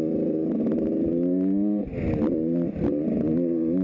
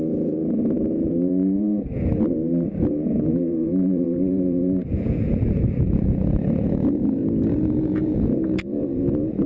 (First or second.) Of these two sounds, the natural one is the first